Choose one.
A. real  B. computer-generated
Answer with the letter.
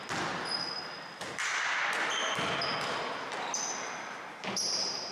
A